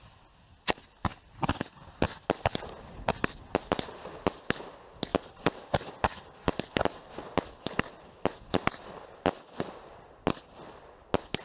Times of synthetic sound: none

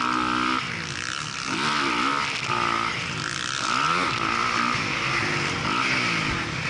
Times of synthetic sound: none

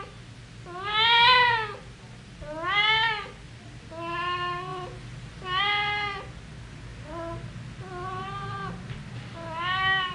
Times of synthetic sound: none

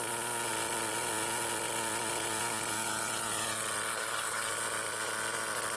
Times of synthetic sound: 3.9-4.5 (codec, HILCodec)

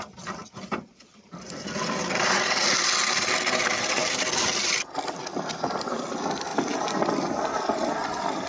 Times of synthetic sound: 4.0-5.1 (vocoder, BigVGAN v2)

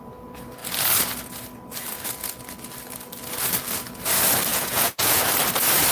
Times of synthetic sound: 4.5-5.2 (vocoder, Vocos)

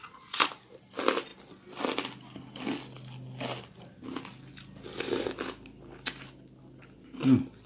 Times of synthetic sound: 0.0-0.5 (vocoder, Vocos)

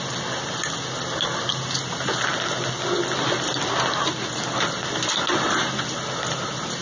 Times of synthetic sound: none